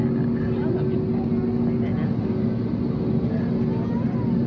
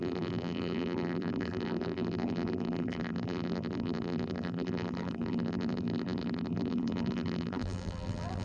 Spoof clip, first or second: second